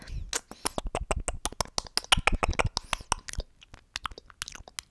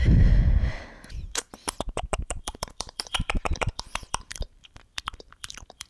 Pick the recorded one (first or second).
first